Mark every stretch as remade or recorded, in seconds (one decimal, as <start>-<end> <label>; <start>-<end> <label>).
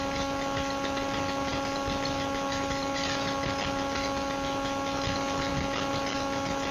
0.0-6.7 recorded